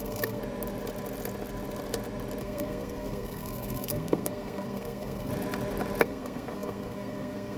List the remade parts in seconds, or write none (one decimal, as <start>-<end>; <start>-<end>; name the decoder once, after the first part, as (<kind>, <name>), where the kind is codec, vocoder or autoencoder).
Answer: 0.0-0.4 (codec, SNAC); 2.4-5.3; 6.0-7.6